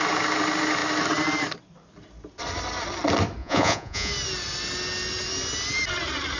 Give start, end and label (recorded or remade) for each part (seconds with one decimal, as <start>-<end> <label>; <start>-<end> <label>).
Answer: 0.0-3.4 recorded; 3.4-4.1 remade; 4.1-6.4 recorded